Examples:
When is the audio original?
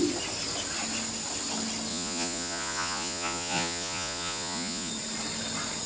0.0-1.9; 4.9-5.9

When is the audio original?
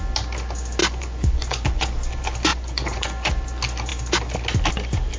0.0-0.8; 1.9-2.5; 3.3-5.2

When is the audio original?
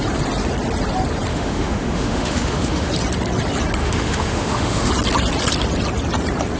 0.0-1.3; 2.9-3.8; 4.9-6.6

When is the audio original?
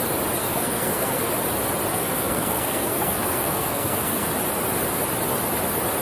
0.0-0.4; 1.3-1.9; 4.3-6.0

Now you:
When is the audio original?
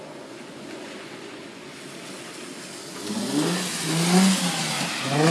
1.7-5.3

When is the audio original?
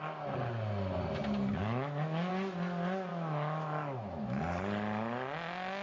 0.0-1.5; 2.3-3.1; 4.4-5.8